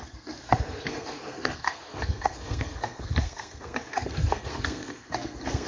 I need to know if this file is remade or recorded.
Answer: remade